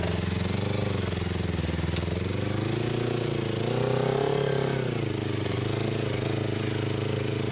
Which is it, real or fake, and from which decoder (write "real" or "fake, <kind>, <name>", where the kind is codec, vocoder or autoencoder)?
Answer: real